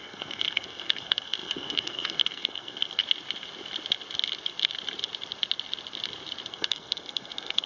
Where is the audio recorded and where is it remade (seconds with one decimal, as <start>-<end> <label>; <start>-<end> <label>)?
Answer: 0.0-3.0 remade; 3.0-6.5 recorded; 6.5-7.7 remade